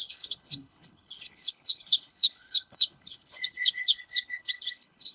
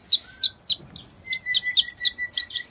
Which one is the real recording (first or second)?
second